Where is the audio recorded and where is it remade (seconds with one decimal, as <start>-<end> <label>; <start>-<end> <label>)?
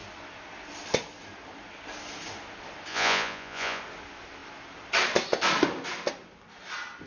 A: 0.0-2.9 recorded; 2.9-3.8 remade; 3.8-7.1 recorded